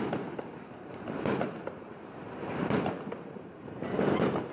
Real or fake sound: fake